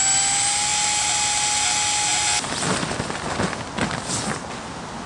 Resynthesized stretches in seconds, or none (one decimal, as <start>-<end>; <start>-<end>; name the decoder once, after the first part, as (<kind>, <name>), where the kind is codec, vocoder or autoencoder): none